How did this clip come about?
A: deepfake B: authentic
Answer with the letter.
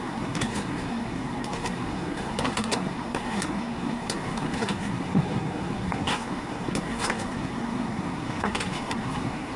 A